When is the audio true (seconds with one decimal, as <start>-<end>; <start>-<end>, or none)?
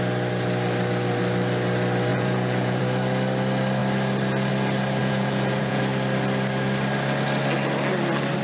0.0-2.1; 2.8-5.0; 5.8-8.4